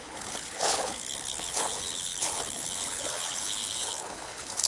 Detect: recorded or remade remade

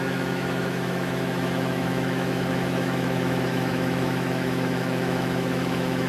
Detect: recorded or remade remade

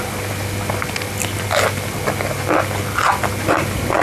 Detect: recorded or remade recorded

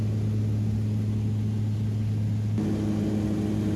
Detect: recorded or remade recorded